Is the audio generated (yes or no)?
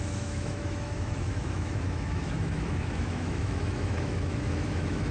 yes